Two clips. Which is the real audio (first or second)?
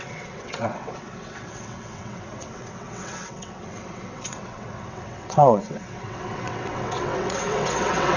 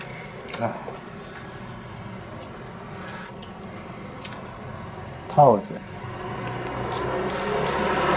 second